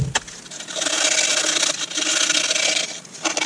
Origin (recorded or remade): recorded